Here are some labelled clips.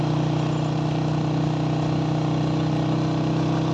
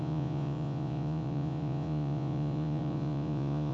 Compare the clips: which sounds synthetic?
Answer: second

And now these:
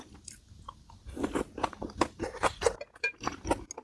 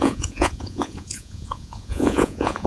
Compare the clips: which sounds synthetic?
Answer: second